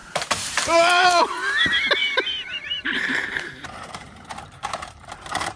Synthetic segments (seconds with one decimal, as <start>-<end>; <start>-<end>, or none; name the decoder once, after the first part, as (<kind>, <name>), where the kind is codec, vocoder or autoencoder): 0.0-1.2 (vocoder, BigVGAN v2); 2.0-5.6